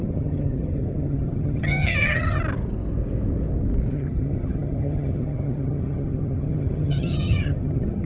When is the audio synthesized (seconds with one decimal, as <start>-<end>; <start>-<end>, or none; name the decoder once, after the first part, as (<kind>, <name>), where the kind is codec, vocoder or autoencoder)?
0.0-2.4 (vocoder, HiFi-GAN); 3.9-8.1